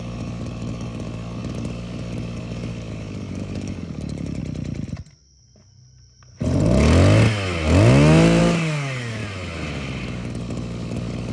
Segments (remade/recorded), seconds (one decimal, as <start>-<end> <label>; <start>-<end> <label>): 0.0-4.4 remade; 4.4-8.4 recorded; 8.4-9.2 remade; 9.2-10.0 recorded; 10.0-11.3 remade